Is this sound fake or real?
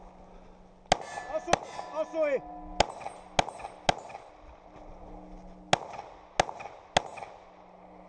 real